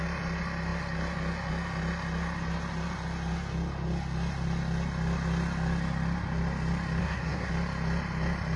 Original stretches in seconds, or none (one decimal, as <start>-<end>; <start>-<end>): 0.0-7.0; 7.5-8.6